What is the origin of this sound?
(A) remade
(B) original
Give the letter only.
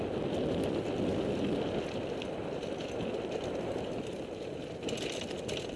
B